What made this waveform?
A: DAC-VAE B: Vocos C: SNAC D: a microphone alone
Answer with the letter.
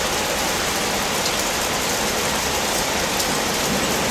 D